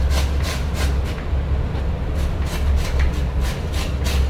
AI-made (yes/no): no